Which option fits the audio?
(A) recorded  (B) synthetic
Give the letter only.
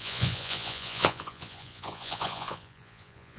B